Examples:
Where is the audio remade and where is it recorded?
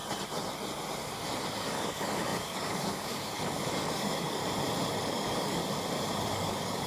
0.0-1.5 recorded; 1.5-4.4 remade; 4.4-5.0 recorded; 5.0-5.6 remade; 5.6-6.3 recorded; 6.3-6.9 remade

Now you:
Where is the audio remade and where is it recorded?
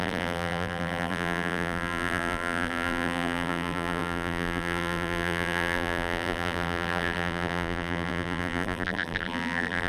0.0-9.9 remade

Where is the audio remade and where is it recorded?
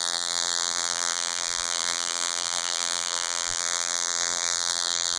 0.0-5.2 remade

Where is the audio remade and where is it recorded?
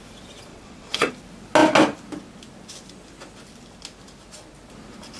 0.0-0.5 recorded; 0.5-1.1 remade; 1.1-5.2 recorded